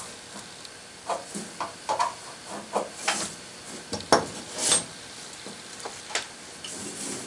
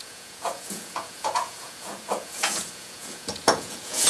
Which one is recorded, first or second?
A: first